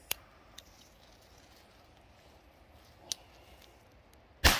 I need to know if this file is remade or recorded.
recorded